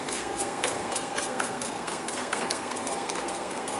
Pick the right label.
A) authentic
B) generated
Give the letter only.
B